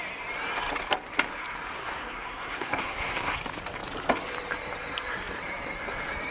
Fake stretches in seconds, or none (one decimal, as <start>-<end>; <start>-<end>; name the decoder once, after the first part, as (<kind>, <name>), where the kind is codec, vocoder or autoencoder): 1.8-3.4 (codec, SNAC)